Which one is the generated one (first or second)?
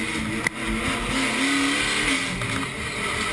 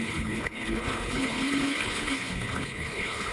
second